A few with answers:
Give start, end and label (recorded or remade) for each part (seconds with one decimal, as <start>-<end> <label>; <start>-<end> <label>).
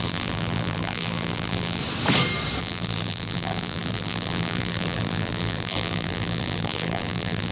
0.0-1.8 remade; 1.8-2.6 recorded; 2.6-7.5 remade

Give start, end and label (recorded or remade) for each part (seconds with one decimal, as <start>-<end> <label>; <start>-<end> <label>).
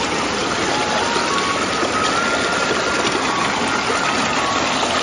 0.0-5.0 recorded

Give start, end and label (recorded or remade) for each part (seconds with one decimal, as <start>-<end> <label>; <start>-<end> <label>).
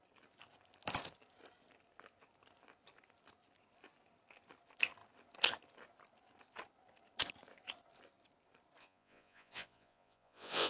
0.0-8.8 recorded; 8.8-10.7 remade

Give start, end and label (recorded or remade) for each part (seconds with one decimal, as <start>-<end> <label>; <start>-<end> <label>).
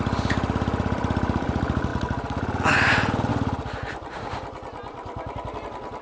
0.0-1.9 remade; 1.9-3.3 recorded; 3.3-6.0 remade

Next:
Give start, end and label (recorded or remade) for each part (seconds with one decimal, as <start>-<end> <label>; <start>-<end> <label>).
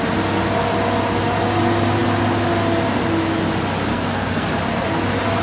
0.0-3.9 recorded; 3.9-4.5 remade; 4.5-5.4 recorded